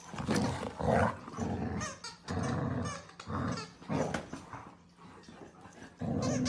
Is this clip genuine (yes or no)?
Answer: yes